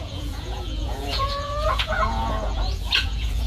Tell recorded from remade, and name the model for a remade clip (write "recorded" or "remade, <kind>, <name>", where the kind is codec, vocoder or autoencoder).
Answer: remade, vocoder, Vocos